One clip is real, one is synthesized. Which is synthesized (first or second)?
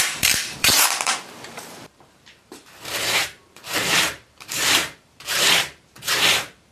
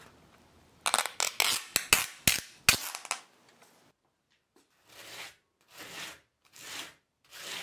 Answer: first